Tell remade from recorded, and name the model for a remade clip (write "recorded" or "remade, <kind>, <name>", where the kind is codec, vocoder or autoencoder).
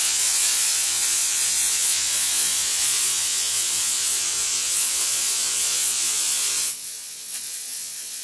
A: remade, vocoder, Vocos